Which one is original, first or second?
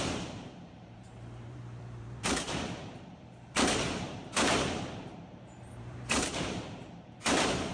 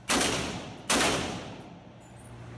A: second